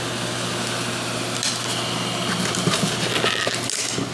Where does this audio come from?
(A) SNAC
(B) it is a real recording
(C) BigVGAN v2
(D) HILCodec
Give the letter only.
B